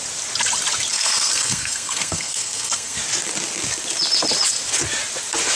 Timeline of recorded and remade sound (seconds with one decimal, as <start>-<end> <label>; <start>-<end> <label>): 0.0-0.9 recorded; 0.9-3.0 remade; 3.0-5.6 recorded

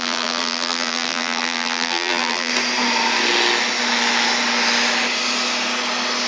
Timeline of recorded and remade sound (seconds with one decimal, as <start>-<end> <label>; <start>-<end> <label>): 0.0-2.5 remade; 2.5-6.3 recorded

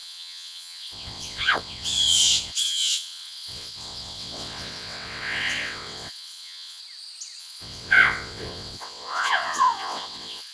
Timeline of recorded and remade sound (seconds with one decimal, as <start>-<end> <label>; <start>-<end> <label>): 0.0-6.8 remade; 6.8-7.4 recorded; 7.4-10.5 remade

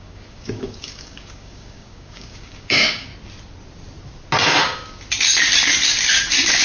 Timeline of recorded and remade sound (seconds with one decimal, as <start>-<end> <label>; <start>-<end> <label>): 0.0-3.1 remade; 3.1-6.6 recorded

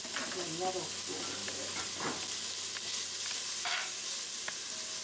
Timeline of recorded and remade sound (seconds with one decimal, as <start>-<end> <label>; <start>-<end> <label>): 0.0-5.0 recorded